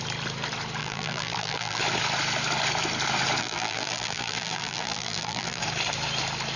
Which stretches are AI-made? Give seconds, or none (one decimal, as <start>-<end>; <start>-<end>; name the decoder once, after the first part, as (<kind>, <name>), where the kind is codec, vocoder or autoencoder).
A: 0.8-1.8 (vocoder, BigVGAN v2); 3.4-5.6

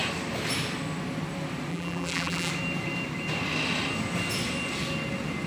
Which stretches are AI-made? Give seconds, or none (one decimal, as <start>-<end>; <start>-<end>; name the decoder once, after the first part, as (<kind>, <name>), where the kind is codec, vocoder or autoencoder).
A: 1.7-2.5 (vocoder, BigVGAN v2)